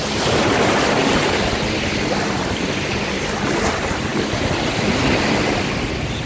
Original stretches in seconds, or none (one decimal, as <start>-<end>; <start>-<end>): 0.0-6.3